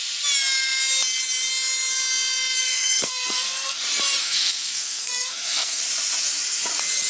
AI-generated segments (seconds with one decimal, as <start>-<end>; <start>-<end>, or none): 2.6-3.8; 4.2-5.8